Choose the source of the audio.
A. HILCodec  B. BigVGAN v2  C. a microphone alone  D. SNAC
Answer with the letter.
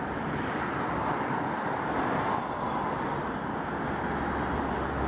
C